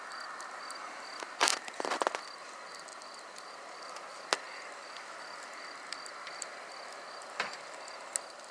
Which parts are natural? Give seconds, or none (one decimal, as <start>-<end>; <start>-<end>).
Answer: 0.0-8.5